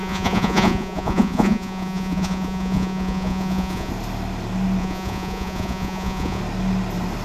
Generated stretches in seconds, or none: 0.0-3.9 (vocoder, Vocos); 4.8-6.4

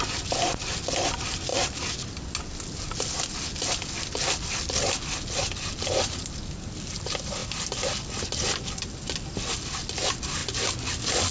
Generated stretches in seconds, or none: none

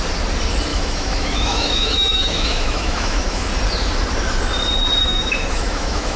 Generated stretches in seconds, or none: 0.7-3.5 (autoencoder, DAC-VAE); 5.0-6.2

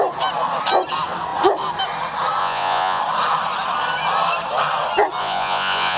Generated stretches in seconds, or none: 2.4-3.0 (vocoder, Vocos); 5.2-6.0

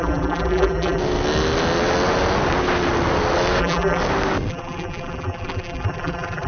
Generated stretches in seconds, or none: 0.0-1.0 (vocoder, BigVGAN v2); 3.6-4.0; 4.5-6.5

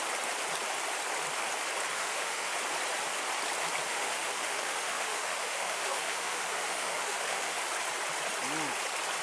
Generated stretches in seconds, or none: 1.9-2.5 (autoencoder, DAC-VAE); 3.9-7.6

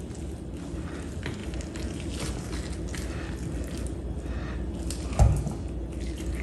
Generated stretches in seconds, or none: none

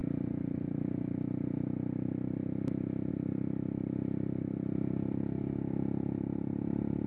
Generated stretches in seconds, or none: none